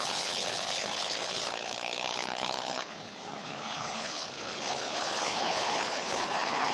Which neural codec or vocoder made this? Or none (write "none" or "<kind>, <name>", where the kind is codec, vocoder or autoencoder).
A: codec, HILCodec